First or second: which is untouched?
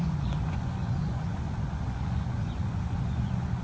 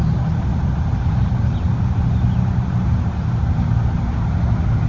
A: second